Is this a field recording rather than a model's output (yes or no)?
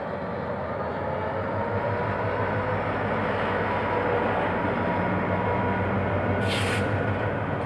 yes